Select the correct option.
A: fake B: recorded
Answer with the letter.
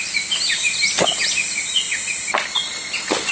B